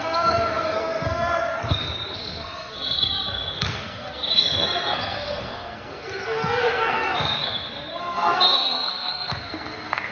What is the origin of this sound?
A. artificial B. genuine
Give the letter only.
A